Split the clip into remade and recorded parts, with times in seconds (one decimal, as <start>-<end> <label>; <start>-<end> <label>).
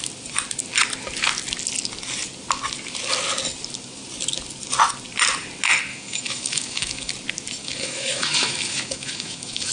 0.0-5.9 recorded; 5.9-7.1 remade; 7.1-7.6 recorded; 7.6-9.7 remade